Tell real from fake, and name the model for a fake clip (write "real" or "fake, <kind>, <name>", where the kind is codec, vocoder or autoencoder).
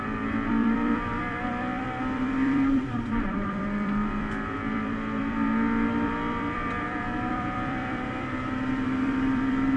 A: fake, vocoder, BigVGAN v2